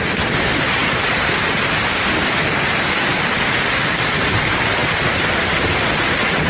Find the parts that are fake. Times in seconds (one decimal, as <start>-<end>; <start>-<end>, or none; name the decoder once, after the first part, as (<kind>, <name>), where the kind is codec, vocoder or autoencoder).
none